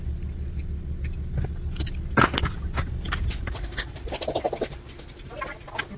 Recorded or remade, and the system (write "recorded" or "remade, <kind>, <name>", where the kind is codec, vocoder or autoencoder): recorded